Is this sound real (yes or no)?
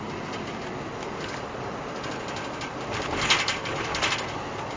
yes